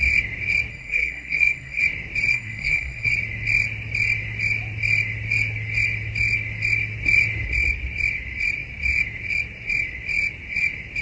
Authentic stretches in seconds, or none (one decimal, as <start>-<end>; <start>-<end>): 0.0-0.7; 1.8-2.3; 3.1-11.0